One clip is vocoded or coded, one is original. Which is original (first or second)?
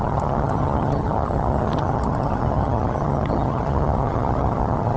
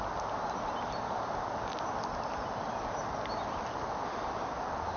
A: second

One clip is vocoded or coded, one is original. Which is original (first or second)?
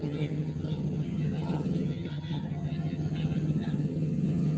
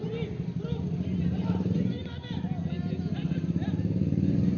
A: second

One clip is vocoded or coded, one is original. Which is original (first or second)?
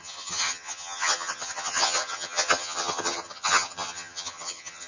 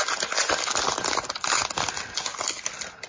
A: second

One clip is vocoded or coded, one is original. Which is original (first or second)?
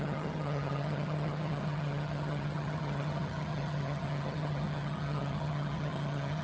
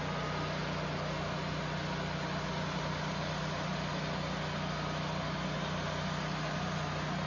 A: second